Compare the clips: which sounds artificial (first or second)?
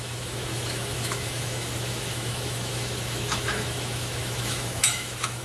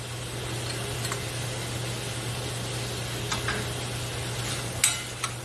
first